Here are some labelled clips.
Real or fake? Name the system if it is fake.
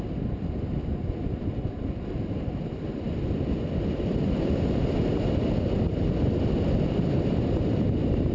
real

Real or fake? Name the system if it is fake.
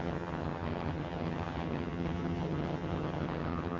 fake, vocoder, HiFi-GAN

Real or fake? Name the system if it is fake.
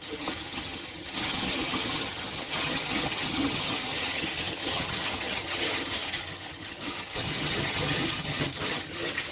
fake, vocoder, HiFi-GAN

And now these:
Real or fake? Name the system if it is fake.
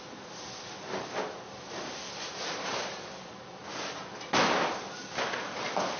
real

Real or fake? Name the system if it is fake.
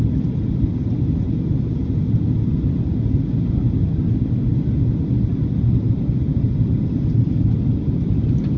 real